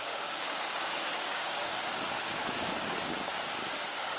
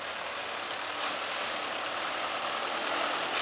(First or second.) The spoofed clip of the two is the first